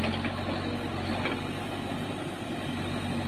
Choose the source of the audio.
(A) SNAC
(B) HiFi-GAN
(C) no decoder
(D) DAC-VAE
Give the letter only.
C